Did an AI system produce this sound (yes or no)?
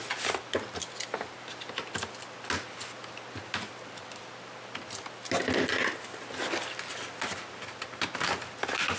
no